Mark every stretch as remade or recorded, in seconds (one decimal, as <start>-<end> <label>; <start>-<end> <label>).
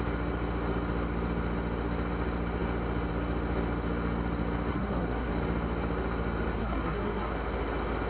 0.0-4.7 recorded; 4.7-5.3 remade; 5.3-6.6 recorded; 6.6-7.3 remade; 7.3-8.1 recorded